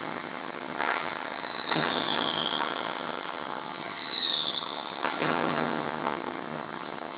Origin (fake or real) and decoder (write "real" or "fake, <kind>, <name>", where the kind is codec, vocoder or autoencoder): fake, vocoder, HiFi-GAN